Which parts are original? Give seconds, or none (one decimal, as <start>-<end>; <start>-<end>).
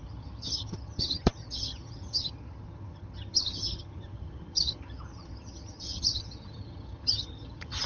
none